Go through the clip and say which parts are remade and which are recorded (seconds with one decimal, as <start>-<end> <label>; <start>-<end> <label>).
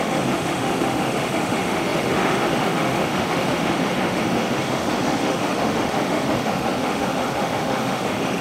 0.0-8.4 remade